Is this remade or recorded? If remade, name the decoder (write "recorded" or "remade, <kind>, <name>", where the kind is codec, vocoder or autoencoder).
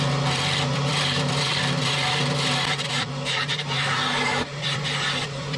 remade, vocoder, BigVGAN v2